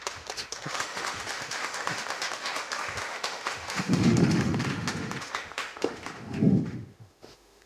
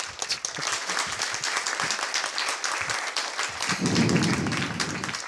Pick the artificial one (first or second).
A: first